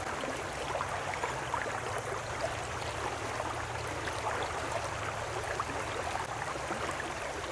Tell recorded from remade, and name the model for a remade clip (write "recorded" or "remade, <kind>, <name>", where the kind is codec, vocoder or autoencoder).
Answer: recorded